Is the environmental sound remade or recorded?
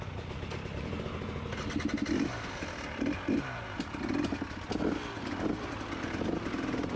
recorded